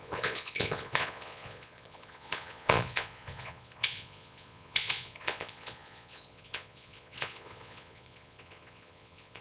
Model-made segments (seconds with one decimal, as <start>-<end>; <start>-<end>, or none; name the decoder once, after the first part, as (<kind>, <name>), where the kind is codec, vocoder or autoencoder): 0.0-9.4 (vocoder, Vocos)